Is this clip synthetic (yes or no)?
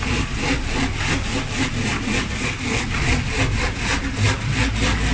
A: no